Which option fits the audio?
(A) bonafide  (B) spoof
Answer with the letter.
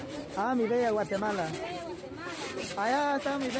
A